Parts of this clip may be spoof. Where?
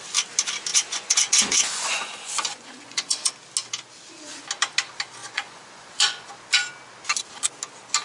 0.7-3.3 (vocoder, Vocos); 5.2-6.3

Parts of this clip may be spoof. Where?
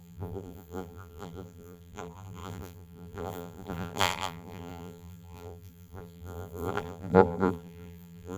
0.0-8.4 (vocoder, BigVGAN v2)